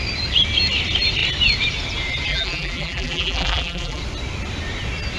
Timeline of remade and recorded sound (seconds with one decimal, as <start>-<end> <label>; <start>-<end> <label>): 0.0-2.3 recorded; 2.3-4.0 remade; 4.0-5.2 recorded